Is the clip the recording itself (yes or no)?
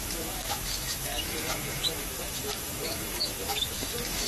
no